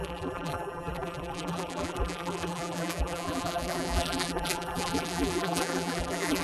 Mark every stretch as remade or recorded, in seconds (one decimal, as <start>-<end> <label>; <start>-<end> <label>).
0.0-6.4 remade